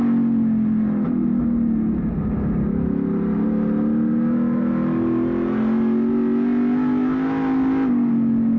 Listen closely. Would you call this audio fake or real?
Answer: real